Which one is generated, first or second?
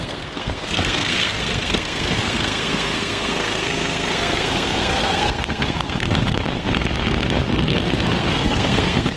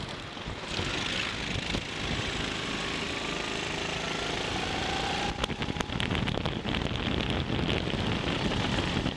first